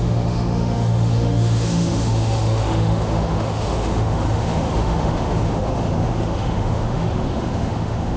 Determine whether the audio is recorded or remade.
remade